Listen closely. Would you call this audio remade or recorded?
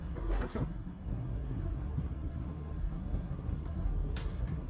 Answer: remade